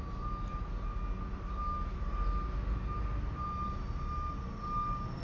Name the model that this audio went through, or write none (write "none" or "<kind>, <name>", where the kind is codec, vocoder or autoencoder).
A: none